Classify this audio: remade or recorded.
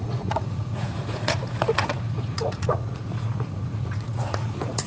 remade